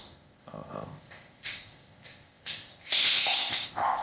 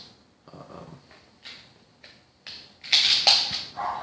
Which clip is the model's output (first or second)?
first